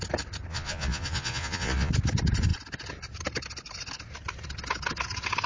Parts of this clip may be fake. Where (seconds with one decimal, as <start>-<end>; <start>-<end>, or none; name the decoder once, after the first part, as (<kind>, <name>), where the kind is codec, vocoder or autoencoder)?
0.5-1.9 (vocoder, Vocos)